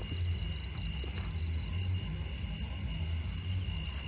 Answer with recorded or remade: recorded